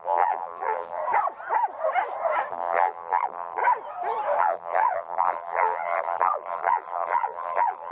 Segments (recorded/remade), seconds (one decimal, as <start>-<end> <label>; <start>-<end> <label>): 0.0-1.0 remade; 1.0-2.5 recorded; 2.5-3.6 remade; 3.6-4.4 recorded; 4.4-7.9 remade